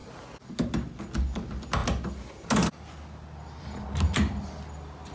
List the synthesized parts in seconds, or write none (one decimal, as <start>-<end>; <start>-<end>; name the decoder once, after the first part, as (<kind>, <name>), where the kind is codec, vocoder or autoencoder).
none